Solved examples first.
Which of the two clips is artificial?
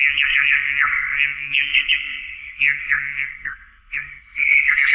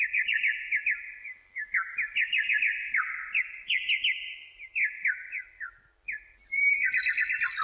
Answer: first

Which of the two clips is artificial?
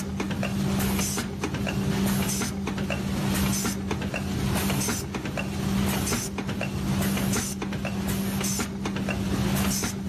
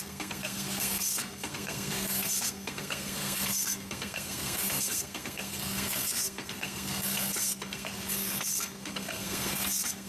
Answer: second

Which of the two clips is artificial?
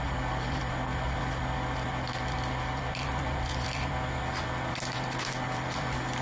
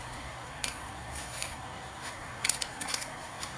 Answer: second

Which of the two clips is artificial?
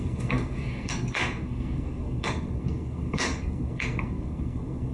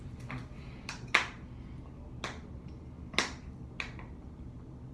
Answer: first